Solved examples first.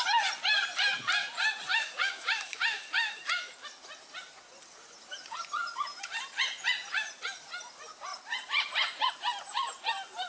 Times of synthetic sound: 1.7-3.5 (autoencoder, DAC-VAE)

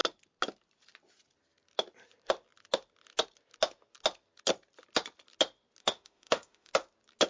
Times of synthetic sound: 5.8-6.7 (autoencoder, DAC-VAE)